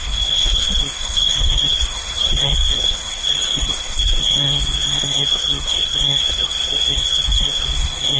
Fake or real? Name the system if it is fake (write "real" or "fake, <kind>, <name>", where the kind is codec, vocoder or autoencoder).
fake, codec, SNAC